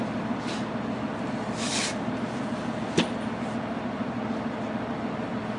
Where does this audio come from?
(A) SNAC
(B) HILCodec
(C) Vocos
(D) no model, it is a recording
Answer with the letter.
D